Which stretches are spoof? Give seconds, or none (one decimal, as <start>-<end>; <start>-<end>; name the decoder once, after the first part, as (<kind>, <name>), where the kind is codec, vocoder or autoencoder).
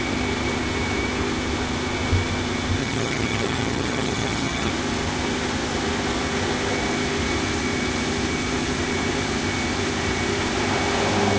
2.8-4.7 (vocoder, HiFi-GAN)